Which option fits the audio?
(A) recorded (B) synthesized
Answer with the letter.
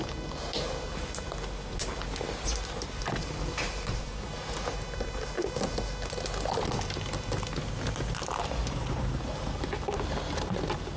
A